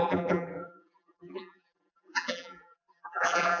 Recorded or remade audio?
remade